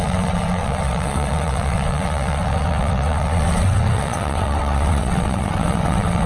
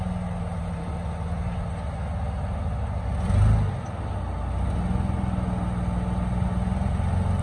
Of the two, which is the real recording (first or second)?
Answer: second